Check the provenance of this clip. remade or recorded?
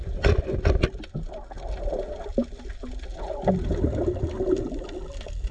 recorded